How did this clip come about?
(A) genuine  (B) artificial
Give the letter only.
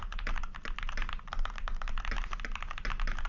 A